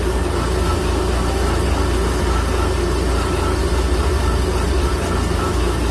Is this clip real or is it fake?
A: real